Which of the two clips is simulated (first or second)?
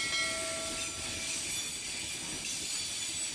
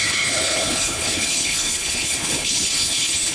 second